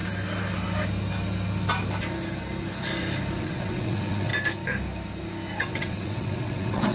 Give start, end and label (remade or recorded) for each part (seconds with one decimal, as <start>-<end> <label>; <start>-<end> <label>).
0.0-3.4 recorded; 3.4-4.3 remade; 4.3-5.6 recorded; 5.6-6.9 remade